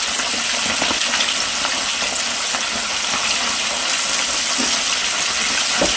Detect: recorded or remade recorded